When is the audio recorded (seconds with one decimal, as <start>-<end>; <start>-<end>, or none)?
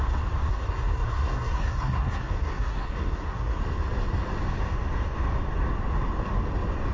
0.0-0.5; 3.6-6.9